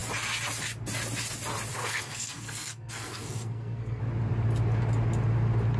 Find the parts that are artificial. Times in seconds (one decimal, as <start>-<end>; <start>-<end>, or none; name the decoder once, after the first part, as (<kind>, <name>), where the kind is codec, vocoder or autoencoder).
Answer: 1.7-4.0 (codec, SNAC)